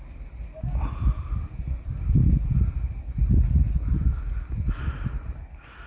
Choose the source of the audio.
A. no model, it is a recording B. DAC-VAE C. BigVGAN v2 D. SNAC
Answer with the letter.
A